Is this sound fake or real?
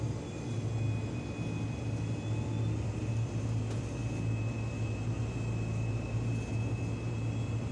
real